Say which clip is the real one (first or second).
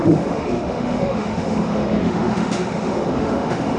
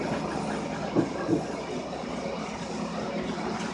second